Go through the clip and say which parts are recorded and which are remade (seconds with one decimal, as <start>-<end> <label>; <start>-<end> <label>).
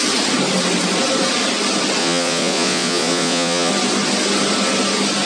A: 0.0-2.0 recorded; 2.0-3.7 remade; 3.7-5.3 recorded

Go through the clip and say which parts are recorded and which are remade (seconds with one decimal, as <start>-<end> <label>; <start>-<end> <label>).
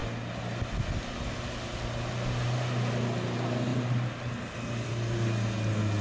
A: 0.0-6.0 recorded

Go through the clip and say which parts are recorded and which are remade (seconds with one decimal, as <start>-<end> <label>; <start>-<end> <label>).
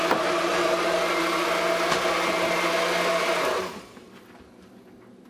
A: 0.0-5.3 recorded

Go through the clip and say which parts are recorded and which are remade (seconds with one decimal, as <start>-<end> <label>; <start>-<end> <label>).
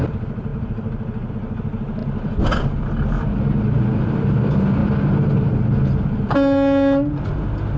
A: 0.0-7.8 recorded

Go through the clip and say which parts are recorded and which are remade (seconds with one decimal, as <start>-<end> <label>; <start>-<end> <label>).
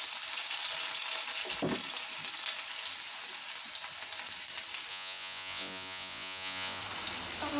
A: 0.0-4.9 recorded; 4.9-6.8 remade; 6.8-7.6 recorded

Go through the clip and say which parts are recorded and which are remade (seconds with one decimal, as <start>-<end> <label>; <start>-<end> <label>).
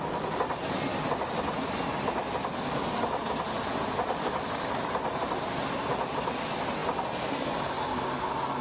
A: 0.0-8.6 recorded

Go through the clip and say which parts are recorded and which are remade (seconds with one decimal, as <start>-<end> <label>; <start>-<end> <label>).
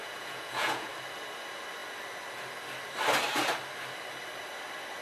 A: 0.0-0.9 remade; 0.9-5.0 recorded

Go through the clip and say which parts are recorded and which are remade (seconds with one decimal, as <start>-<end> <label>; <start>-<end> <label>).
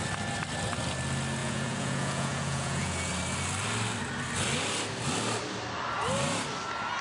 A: 0.0-1.4 recorded; 1.4-3.1 remade; 3.1-7.0 recorded